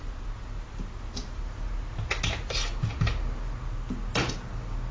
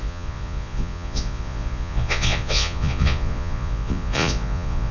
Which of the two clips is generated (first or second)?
second